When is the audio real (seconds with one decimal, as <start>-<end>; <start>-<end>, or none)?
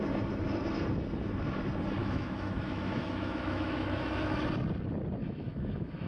0.0-2.0; 4.4-5.2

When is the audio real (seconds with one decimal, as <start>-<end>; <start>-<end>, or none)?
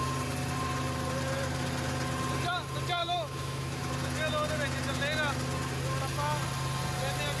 0.0-3.0; 3.9-7.4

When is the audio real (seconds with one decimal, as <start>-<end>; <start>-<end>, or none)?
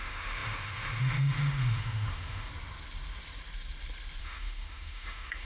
2.5-4.2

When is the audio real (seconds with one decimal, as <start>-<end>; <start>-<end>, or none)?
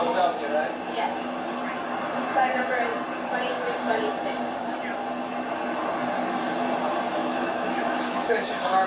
0.0-7.2; 8.5-8.9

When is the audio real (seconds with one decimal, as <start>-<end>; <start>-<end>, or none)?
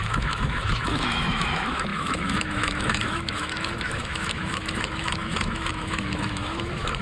none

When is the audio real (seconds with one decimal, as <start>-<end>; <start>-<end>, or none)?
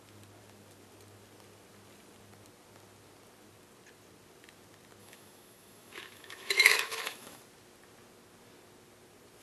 0.0-5.0; 7.4-9.4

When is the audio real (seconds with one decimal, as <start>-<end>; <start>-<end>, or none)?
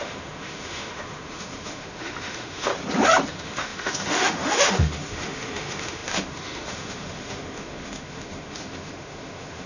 2.7-3.3